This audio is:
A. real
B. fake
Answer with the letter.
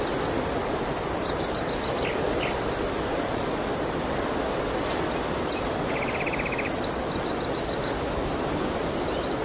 A